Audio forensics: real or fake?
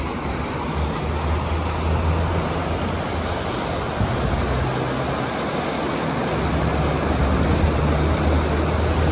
real